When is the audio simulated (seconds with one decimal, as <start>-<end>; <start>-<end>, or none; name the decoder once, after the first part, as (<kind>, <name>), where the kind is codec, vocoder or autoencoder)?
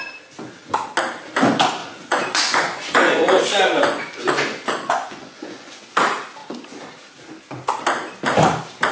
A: 1.8-5.8 (vocoder, Vocos)